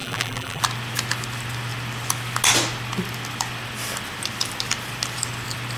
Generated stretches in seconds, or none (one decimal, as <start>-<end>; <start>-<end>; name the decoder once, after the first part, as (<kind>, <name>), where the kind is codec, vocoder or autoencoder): 0.0-0.6 (vocoder, BigVGAN v2)